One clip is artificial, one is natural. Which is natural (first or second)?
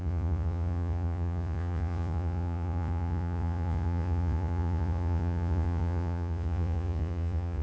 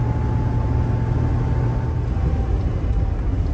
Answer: second